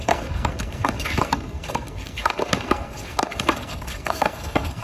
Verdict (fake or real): fake